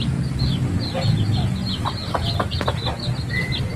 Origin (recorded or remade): recorded